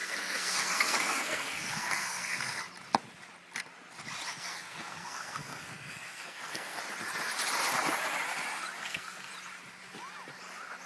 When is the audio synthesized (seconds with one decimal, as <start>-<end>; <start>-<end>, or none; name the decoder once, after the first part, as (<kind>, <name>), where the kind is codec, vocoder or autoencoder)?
0.0-2.6 (codec, SNAC); 4.3-6.8; 8.8-9.3